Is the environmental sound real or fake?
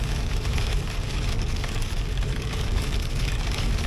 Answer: fake